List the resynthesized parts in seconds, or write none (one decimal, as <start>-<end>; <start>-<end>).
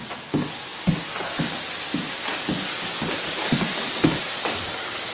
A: none